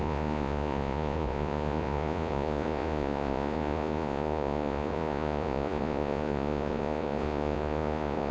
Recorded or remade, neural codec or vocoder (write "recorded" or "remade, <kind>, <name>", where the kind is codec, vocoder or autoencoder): remade, vocoder, Vocos